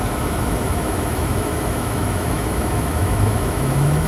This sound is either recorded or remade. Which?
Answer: remade